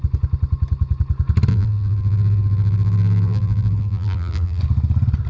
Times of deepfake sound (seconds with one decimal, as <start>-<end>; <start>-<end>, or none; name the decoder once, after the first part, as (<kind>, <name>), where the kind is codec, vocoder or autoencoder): 1.5-4.6 (vocoder, BigVGAN v2)